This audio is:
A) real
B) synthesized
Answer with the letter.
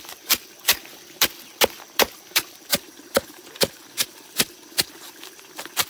B